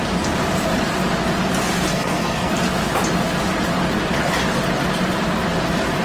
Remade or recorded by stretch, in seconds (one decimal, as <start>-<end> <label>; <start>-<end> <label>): 0.0-1.9 recorded; 1.9-2.5 remade; 2.5-6.0 recorded